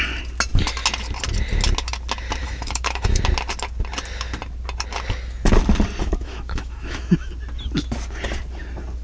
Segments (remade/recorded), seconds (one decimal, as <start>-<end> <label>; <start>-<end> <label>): 0.0-2.4 recorded; 2.4-3.2 remade; 3.2-6.0 recorded; 6.0-7.3 remade; 7.3-9.0 recorded